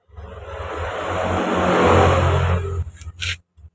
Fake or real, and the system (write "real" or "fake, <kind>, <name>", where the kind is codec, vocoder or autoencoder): real